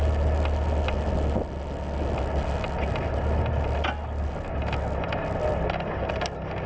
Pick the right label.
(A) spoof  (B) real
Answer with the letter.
B